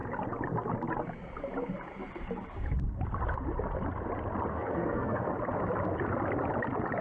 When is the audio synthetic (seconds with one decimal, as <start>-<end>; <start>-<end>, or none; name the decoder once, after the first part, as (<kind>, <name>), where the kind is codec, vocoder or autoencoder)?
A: 4.5-5.3 (codec, SNAC)